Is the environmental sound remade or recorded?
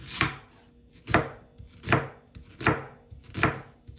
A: recorded